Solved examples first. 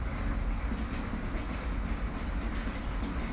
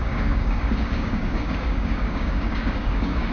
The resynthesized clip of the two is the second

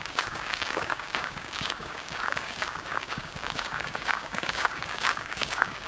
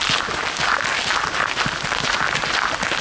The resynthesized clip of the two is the first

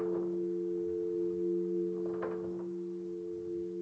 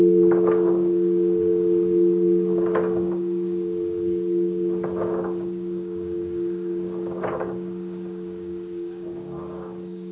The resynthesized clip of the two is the second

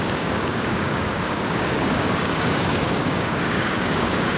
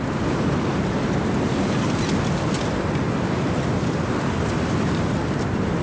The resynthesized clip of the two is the first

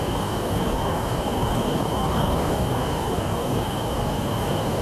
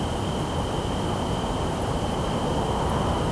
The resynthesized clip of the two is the first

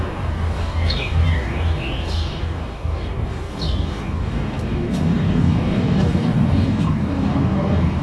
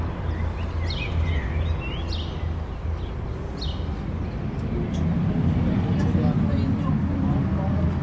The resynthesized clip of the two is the first